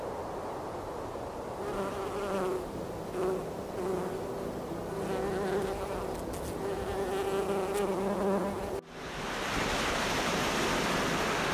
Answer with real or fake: real